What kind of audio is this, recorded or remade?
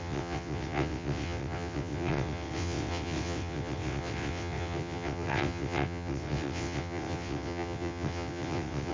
remade